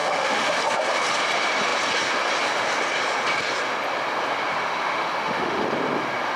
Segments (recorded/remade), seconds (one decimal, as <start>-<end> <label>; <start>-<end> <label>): 0.0-0.6 remade; 0.6-4.6 recorded; 4.6-5.6 remade; 5.6-6.4 recorded